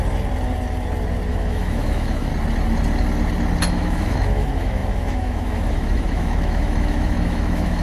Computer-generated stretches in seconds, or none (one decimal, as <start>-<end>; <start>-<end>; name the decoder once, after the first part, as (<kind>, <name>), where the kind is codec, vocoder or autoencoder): 1.3-2.3 (autoencoder, DAC-VAE); 3.6-7.8